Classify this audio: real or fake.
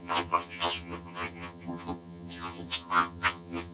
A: fake